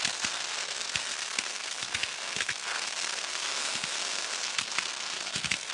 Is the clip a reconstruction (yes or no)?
yes